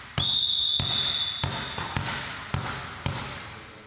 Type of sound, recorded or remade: recorded